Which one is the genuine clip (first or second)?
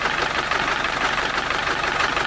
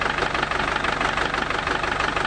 second